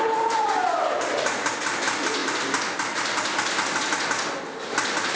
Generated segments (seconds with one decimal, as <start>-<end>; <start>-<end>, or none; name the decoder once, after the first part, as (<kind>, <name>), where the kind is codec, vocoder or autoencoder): none